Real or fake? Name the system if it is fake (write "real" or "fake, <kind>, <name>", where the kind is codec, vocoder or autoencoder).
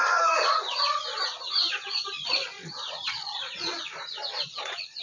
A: fake, vocoder, Vocos